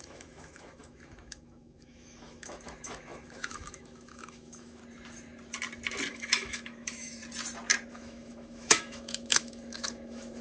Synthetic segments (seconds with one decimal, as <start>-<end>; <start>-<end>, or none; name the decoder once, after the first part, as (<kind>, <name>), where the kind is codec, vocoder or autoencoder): 0.0-4.8 (autoencoder, DAC-VAE); 6.1-7.2; 7.9-10.4